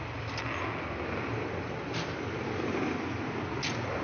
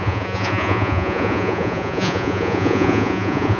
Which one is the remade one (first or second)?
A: second